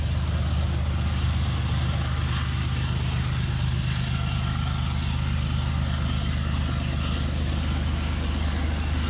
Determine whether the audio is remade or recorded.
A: recorded